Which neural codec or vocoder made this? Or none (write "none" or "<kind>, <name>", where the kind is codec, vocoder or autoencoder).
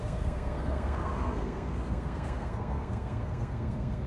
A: codec, SNAC